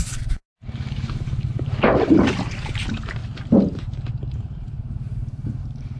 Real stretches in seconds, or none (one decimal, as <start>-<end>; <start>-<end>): 3.2-4.2